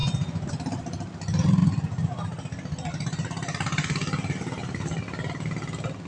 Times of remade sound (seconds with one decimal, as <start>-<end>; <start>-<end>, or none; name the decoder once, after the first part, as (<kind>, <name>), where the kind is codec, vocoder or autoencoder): none